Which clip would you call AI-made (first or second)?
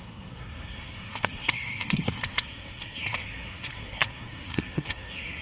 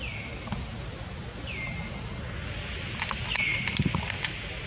first